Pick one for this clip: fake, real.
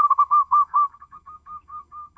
fake